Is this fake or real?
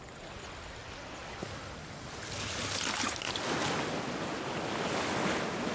real